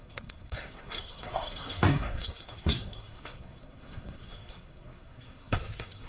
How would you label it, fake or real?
fake